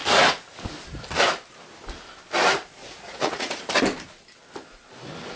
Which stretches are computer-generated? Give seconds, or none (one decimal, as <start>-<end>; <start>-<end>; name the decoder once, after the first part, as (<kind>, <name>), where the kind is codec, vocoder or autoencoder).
2.8-3.6 (vocoder, Vocos)